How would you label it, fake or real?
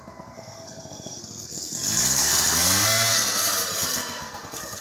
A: fake